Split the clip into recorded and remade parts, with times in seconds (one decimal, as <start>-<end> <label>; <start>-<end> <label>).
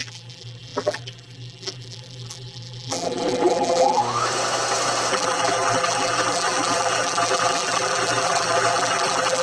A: 0.0-4.0 remade; 4.0-5.1 recorded; 5.1-9.4 remade